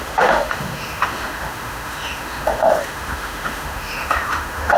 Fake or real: fake